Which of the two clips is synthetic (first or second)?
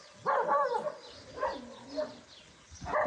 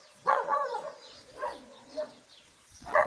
second